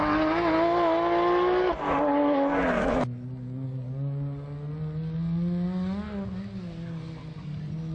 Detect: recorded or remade recorded